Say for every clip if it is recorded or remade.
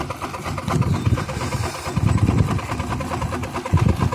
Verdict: recorded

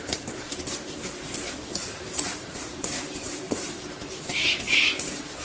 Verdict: remade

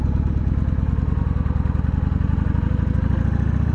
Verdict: recorded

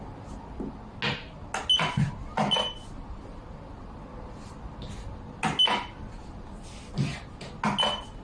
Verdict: recorded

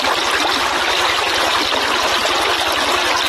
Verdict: recorded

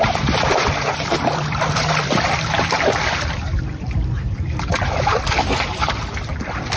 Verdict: remade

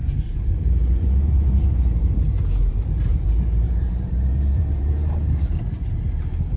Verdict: remade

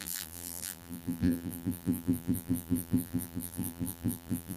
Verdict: remade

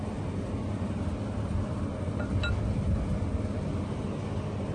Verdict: recorded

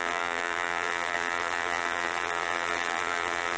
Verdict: remade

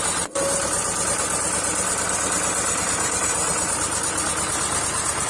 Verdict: remade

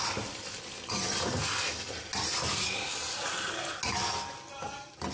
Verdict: recorded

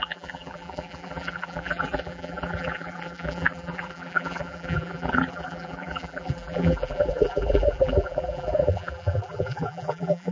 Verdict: remade